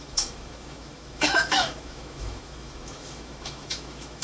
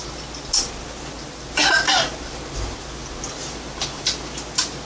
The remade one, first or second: first